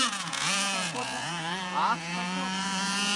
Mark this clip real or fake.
fake